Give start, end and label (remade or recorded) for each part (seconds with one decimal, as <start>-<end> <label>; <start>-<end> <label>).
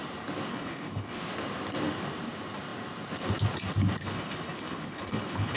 0.0-0.5 recorded; 0.5-1.2 remade; 1.2-4.0 recorded; 4.0-5.6 remade